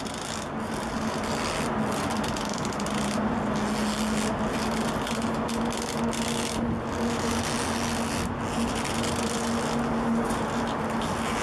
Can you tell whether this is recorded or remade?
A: recorded